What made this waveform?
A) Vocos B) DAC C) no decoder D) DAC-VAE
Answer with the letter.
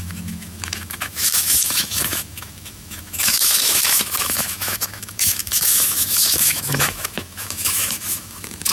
D